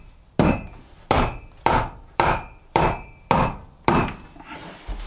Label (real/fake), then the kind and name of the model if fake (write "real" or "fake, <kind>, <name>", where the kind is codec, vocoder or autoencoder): fake, vocoder, BigVGAN v2